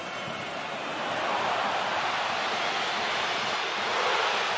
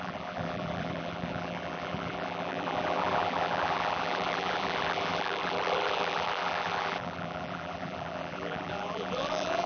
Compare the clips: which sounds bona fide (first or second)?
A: first